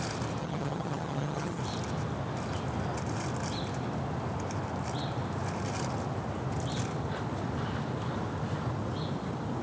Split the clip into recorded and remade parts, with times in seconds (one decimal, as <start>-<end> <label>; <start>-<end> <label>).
0.0-0.4 recorded; 0.4-1.6 remade; 1.6-9.6 recorded